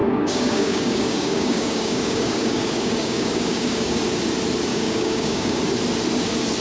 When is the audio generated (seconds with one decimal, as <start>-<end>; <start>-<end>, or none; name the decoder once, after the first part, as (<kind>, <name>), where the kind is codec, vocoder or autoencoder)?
0.0-4.0 (codec, DAC); 4.7-5.6